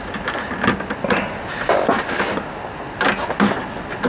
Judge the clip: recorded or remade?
recorded